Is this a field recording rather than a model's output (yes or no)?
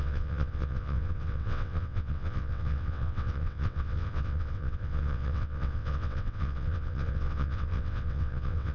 no